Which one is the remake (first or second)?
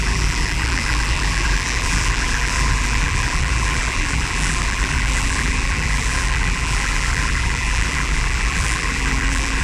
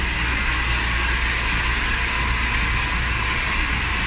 first